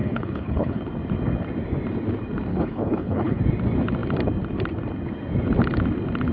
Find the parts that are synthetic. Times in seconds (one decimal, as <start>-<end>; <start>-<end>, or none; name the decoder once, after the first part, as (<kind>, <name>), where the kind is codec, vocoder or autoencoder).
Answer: 0.0-0.8 (codec, HILCodec); 2.5-3.4